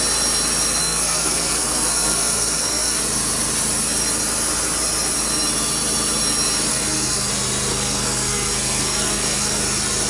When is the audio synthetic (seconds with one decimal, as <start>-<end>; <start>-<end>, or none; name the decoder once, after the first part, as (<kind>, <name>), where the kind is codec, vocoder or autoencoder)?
0.8-3.0 (codec, SNAC); 6.7-7.3; 7.7-9.6